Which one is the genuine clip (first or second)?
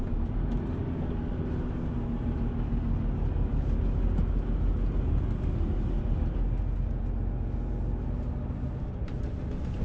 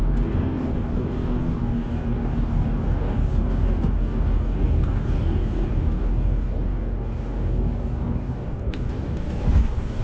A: first